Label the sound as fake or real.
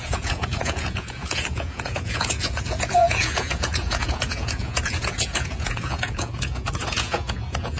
fake